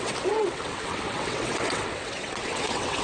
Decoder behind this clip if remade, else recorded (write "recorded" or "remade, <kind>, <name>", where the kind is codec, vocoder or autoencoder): remade, vocoder, WaveNeXt